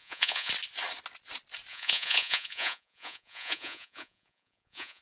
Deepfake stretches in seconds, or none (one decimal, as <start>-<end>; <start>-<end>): 0.0-0.5; 1.7-5.0